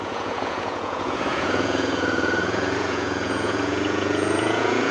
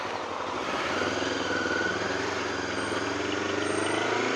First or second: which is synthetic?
first